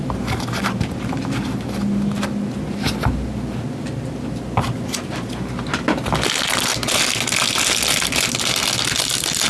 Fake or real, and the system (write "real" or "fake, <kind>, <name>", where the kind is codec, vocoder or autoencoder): real